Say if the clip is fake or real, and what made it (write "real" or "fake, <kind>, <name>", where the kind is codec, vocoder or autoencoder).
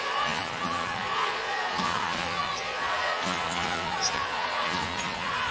fake, vocoder, Vocos